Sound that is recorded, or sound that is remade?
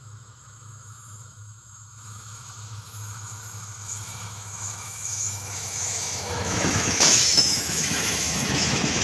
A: remade